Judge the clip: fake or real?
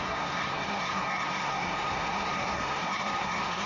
fake